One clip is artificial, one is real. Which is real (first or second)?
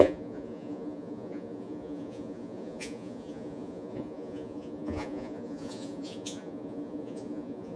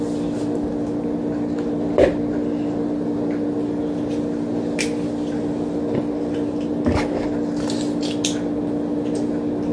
second